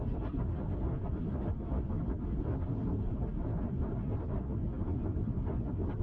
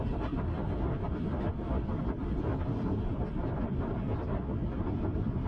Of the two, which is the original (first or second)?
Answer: first